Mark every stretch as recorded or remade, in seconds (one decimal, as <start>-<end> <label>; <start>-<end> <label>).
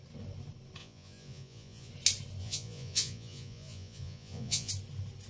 0.0-0.8 recorded; 0.8-1.9 remade; 1.9-2.4 recorded; 2.4-4.7 remade; 4.7-5.3 recorded